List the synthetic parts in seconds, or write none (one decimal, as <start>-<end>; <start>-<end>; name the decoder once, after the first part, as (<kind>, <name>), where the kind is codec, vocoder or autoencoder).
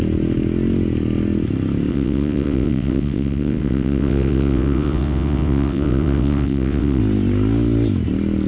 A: 1.9-7.0 (vocoder, WaveNeXt)